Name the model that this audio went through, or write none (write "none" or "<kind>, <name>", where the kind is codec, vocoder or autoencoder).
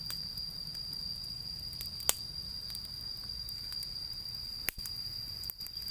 none